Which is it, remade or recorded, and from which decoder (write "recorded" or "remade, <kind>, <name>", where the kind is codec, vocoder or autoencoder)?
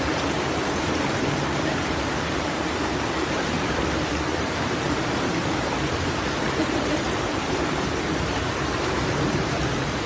remade, vocoder, BigVGAN v2